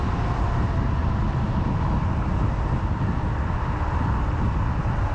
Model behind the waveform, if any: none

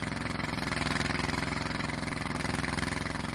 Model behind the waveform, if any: none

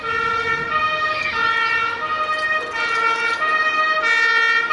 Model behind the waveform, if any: none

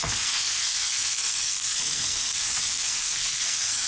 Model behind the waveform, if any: codec, SNAC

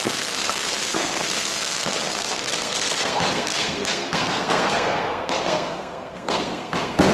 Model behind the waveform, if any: codec, SNAC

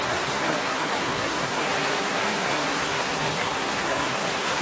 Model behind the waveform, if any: codec, SNAC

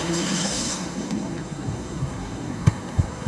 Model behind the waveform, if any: codec, SNAC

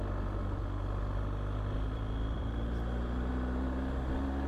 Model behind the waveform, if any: none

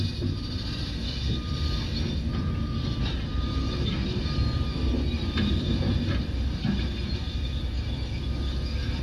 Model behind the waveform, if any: none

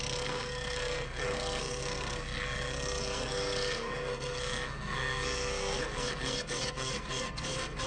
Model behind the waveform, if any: codec, SNAC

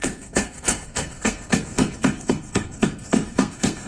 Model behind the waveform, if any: codec, SNAC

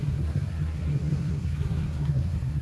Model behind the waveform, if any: codec, SNAC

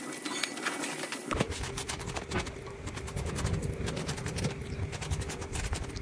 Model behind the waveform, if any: none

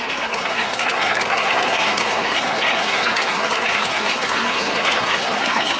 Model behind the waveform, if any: codec, SNAC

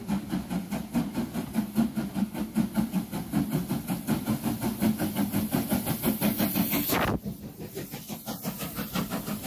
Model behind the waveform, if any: none